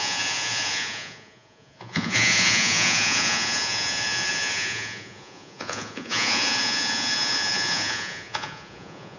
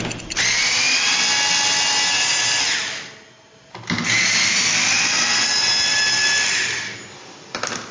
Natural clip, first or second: second